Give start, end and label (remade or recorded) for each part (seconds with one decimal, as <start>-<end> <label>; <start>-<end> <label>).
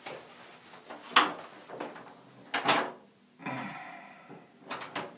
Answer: 0.0-5.2 recorded